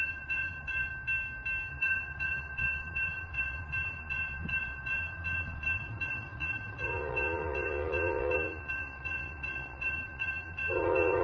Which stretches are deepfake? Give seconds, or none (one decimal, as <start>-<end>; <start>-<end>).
0.0-0.9; 1.7-11.2